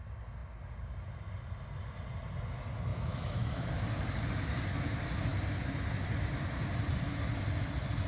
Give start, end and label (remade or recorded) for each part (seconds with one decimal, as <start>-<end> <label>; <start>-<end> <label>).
0.0-2.9 recorded; 2.9-3.7 remade; 3.7-8.1 recorded